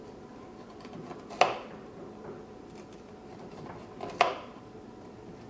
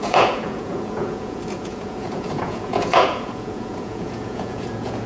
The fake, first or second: second